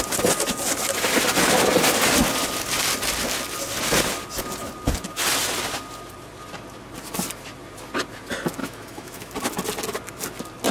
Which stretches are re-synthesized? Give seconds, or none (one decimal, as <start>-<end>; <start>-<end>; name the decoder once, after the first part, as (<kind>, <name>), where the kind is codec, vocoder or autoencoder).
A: 8.6-9.3 (autoencoder, DAC-VAE)